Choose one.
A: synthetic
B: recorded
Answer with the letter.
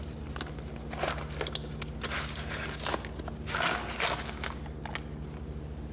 B